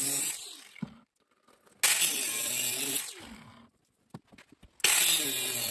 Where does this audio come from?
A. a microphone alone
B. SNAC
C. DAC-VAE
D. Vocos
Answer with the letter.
A